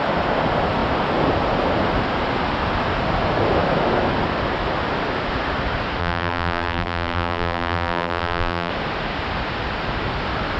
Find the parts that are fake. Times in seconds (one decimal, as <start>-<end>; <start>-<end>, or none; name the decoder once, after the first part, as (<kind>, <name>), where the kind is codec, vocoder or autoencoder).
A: 6.0-8.7 (vocoder, BigVGAN v2)